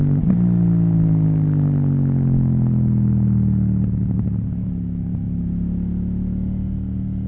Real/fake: real